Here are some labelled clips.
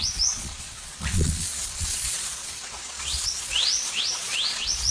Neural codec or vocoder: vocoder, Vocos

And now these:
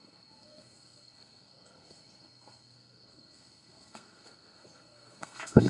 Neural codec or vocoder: codec, SNAC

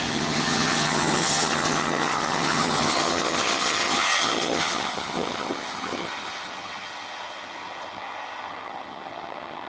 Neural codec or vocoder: vocoder, HiFi-GAN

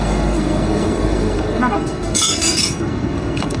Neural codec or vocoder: codec, SNAC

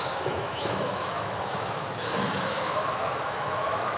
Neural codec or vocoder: autoencoder, DAC-VAE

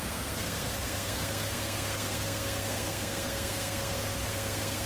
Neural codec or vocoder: codec, SNAC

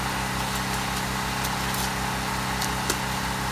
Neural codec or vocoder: none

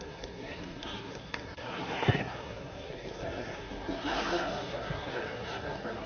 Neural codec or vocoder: codec, SNAC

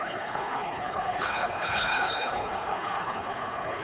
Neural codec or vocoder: codec, HILCodec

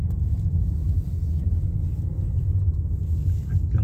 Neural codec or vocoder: none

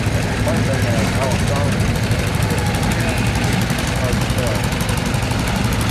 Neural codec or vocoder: none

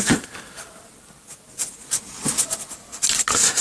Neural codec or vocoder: none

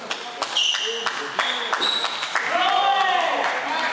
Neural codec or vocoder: none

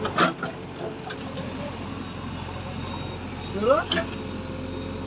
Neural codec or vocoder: none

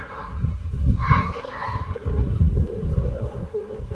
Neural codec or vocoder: codec, SNAC